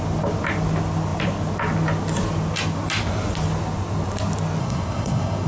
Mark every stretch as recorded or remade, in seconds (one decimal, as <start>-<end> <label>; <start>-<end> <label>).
0.0-4.6 recorded; 4.6-5.5 remade